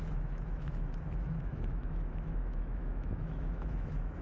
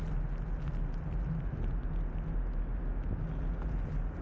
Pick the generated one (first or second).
first